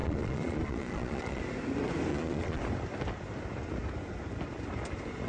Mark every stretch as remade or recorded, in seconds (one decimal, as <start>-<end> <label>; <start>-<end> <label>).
0.0-1.4 remade; 1.4-2.1 recorded; 2.1-2.6 remade; 2.6-5.3 recorded